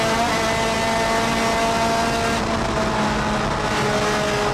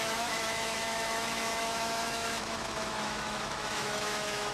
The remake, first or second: second